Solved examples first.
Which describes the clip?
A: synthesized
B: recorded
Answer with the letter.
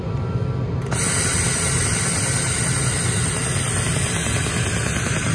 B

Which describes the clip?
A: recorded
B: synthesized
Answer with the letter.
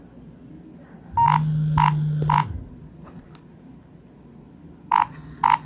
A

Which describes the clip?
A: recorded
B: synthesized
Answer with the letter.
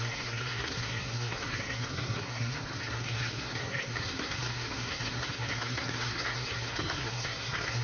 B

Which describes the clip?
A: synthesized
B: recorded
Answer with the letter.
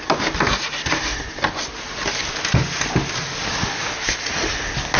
B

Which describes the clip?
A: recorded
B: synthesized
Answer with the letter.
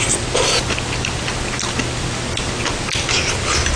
A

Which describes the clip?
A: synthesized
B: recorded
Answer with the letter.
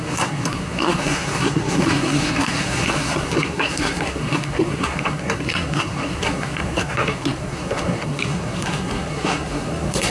A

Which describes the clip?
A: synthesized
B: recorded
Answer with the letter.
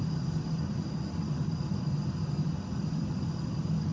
B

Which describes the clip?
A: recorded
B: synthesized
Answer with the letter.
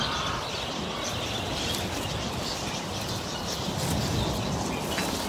A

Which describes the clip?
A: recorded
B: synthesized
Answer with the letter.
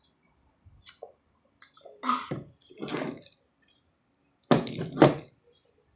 B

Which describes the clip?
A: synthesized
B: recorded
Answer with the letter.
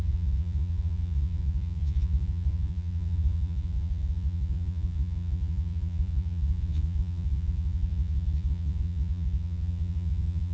A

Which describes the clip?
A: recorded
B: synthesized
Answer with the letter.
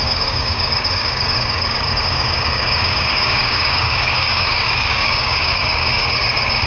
B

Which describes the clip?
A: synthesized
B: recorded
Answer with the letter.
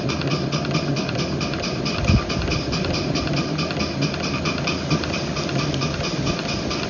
B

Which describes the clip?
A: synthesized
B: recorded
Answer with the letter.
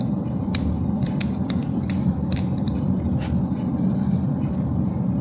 B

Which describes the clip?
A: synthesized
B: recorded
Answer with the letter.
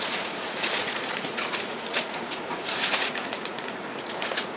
A